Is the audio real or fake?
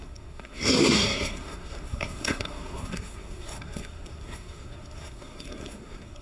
fake